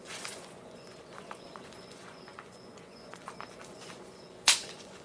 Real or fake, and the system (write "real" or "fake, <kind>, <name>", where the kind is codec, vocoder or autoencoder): fake, vocoder, Vocos